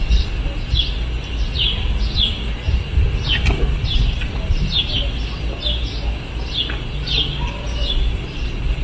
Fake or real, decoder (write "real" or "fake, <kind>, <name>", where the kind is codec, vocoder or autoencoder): real